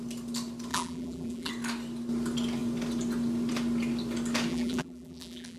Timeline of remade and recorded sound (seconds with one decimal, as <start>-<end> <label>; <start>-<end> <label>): 0.0-0.7 recorded; 0.7-1.5 remade; 1.5-4.5 recorded; 4.5-5.6 remade